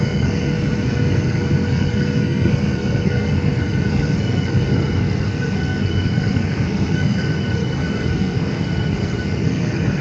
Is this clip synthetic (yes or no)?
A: yes